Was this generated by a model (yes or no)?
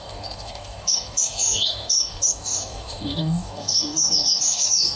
yes